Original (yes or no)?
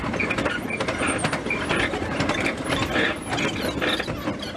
yes